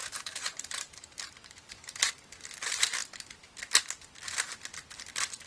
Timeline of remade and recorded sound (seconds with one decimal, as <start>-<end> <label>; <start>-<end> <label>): 0.0-2.1 remade; 2.1-5.5 recorded